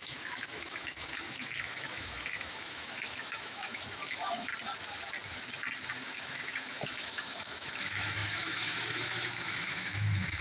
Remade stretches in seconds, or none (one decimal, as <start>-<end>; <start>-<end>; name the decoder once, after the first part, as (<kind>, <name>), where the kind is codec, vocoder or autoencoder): 0.0-4.5 (autoencoder, DAC-VAE); 5.9-10.4